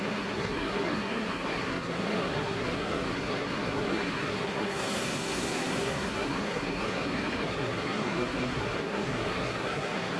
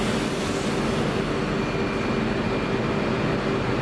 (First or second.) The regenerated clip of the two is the first